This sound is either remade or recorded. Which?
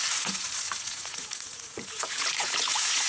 remade